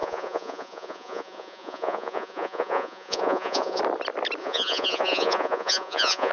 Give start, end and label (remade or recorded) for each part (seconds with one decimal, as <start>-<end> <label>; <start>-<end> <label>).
0.0-3.8 remade; 3.8-4.4 recorded; 4.4-6.3 remade